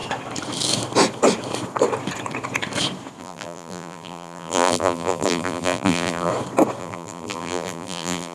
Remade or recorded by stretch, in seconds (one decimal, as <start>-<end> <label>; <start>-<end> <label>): 0.0-3.2 recorded; 3.2-6.3 remade; 6.3-6.8 recorded; 6.8-8.3 remade